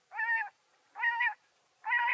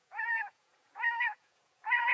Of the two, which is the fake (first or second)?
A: second